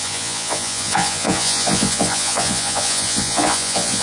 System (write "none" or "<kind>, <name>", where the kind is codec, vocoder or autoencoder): vocoder, Vocos